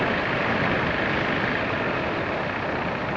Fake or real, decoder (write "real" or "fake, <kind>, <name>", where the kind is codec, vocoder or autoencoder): real